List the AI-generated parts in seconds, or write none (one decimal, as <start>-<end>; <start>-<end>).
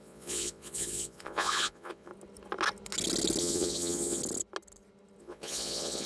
0.0-2.1; 3.4-4.2; 5.2-6.1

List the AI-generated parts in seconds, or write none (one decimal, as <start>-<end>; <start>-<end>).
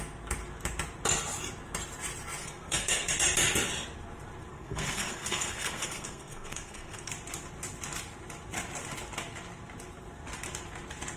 2.4-3.1; 4.5-7.1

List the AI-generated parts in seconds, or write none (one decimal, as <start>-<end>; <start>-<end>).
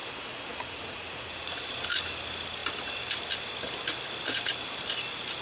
0.0-1.6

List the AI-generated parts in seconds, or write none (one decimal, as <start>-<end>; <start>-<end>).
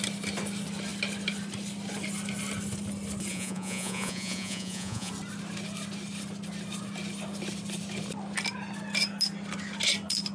3.3-5.1